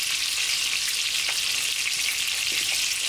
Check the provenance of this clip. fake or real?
real